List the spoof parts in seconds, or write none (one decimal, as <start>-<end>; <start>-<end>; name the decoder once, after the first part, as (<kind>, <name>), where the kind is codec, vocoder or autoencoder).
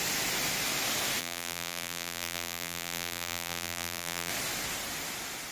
1.2-4.3 (vocoder, BigVGAN v2)